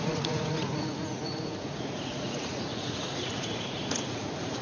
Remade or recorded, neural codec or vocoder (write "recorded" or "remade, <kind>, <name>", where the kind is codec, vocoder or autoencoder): remade, vocoder, Vocos